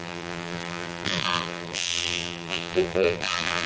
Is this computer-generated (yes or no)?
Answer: yes